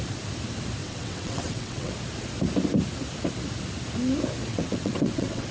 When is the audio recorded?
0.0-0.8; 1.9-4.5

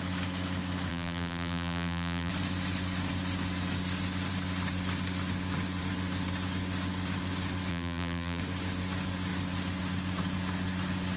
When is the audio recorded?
0.0-0.9; 2.3-7.7; 8.4-11.2

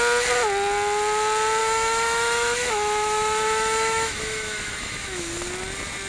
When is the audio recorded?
0.0-1.6; 5.3-6.1

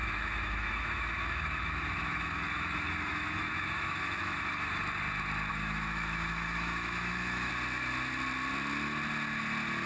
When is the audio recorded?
4.8-5.5; 7.5-9.9

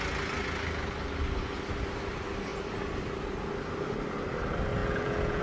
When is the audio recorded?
0.0-4.8

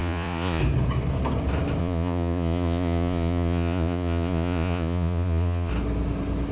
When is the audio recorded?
0.6-1.8; 5.7-6.5

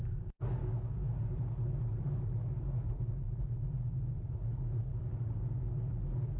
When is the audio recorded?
0.0-0.6; 1.8-4.9; 5.7-6.4